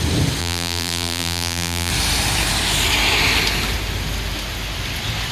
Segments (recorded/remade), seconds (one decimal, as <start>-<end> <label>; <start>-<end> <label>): 0.0-0.4 recorded; 0.4-1.9 remade; 1.9-5.3 recorded